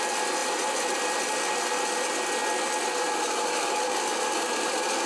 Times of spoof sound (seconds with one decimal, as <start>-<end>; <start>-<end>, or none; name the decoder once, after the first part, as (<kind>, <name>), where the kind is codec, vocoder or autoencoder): none